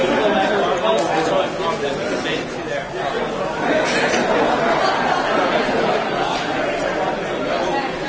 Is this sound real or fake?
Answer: real